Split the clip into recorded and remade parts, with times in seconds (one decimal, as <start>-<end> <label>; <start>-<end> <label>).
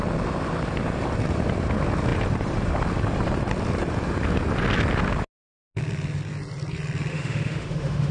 0.0-7.1 recorded; 7.1-8.1 remade